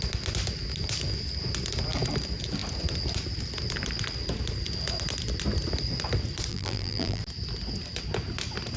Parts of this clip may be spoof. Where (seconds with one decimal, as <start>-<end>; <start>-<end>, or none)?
6.5-7.2